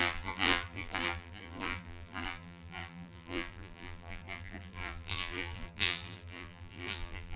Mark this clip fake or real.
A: fake